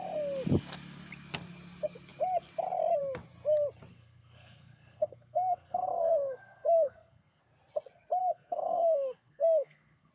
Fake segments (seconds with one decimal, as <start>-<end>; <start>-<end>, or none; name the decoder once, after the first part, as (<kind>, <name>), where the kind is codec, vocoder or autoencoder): 3.9-7.4 (codec, SNAC); 8.2-10.1